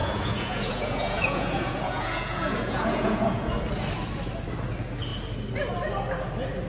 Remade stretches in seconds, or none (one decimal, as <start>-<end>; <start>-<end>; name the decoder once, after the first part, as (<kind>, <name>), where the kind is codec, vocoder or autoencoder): 0.0-3.5 (vocoder, Vocos)